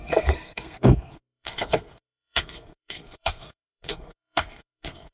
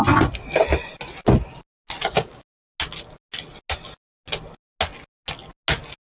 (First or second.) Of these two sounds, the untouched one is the second